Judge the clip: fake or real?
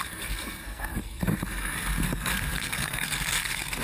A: fake